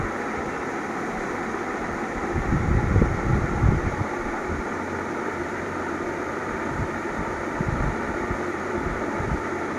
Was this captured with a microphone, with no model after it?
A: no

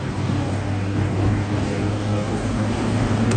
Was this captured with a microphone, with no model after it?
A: no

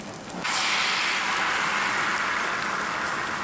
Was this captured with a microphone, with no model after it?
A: yes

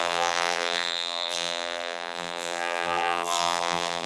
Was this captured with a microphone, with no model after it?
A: no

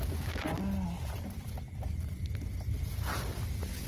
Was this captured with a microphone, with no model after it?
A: yes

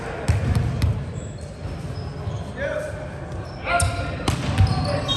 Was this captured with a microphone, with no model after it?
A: yes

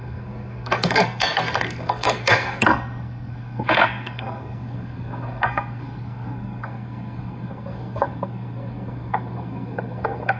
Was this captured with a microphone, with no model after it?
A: no